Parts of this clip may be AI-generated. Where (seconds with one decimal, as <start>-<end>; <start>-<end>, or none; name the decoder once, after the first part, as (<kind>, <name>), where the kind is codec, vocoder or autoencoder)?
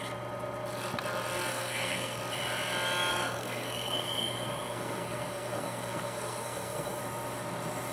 1.5-2.2 (codec, SNAC); 3.1-7.0